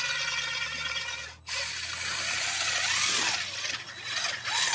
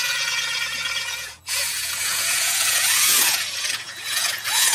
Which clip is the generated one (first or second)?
second